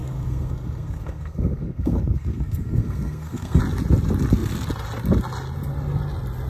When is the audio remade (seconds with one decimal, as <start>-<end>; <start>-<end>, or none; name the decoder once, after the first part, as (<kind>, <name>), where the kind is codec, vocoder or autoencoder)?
0.0-3.6 (codec, SNAC)